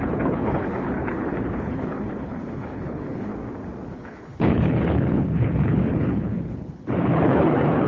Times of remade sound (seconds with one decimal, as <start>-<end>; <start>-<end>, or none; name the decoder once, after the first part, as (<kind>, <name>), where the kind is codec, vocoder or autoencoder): 0.0-3.3 (codec, HILCodec); 3.9-7.9